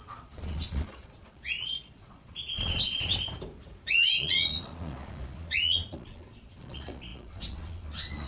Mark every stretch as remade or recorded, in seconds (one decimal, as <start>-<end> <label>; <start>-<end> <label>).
0.0-3.1 remade; 3.1-3.9 recorded; 3.9-8.3 remade